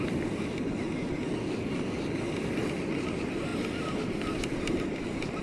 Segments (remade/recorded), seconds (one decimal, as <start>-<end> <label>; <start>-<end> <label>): 0.0-5.4 recorded